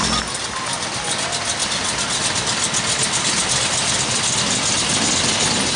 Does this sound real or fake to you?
real